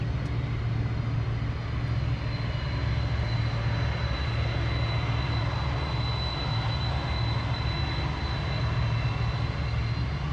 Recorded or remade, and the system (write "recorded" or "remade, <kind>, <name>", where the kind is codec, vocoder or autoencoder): recorded